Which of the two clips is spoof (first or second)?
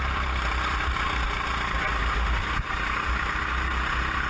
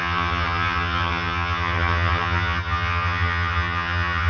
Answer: second